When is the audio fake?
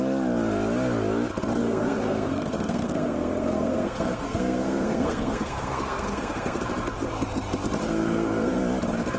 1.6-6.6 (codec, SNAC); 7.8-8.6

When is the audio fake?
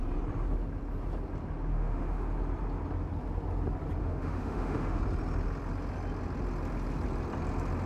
1.7-2.3 (autoencoder, DAC-VAE); 4.0-5.0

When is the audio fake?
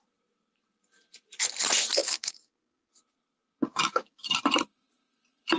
2.0-2.9 (codec, DAC); 3.7-4.2